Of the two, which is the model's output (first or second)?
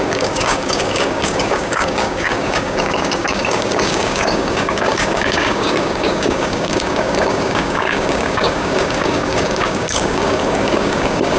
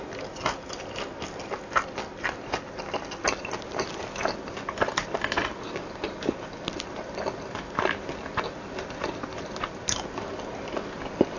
first